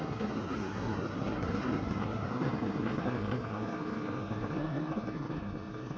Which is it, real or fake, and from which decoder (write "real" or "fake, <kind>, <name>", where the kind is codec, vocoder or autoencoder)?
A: fake, codec, SNAC